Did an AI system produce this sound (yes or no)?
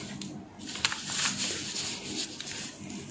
no